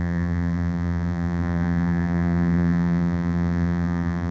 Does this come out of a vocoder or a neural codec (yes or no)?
yes